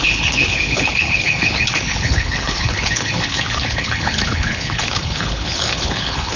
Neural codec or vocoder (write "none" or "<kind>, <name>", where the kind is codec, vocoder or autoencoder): codec, HILCodec